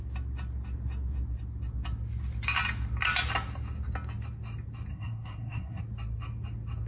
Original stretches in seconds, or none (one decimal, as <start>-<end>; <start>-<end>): 0.0-4.9; 5.8-6.9